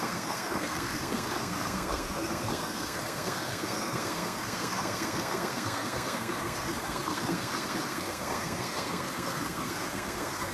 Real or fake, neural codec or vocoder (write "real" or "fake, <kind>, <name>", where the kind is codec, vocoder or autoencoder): fake, codec, SNAC